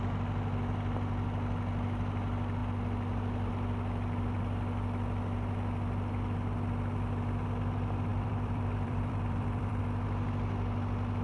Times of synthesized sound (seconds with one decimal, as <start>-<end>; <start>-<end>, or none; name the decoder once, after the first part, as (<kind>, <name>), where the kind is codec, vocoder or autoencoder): 8.1-9.8 (vocoder, BigVGAN v2)